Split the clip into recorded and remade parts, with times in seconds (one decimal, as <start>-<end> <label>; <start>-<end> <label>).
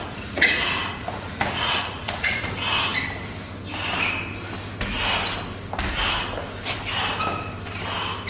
0.0-2.4 remade; 2.4-8.3 recorded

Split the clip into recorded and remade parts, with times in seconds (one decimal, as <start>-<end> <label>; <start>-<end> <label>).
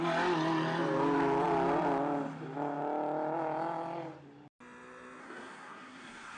0.0-5.2 recorded; 5.2-6.4 remade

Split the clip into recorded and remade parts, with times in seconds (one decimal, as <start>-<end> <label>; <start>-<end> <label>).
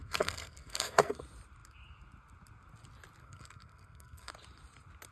0.0-1.2 remade; 1.2-3.2 recorded; 3.2-4.3 remade; 4.3-5.1 recorded